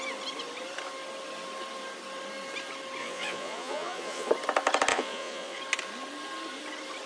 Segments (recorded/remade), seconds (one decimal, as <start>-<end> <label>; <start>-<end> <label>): 0.0-3.0 recorded; 3.0-4.3 remade; 4.3-4.9 recorded; 4.9-5.6 remade; 5.6-7.1 recorded